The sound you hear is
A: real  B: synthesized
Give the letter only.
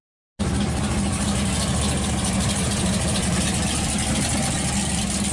A